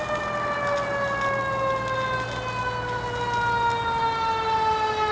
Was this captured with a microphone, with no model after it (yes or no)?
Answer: yes